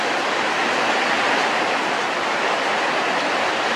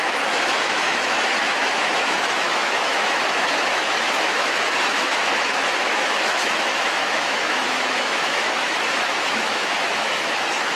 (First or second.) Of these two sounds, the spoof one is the second